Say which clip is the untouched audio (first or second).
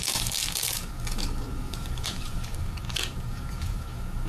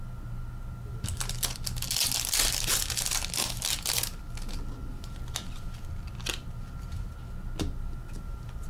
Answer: second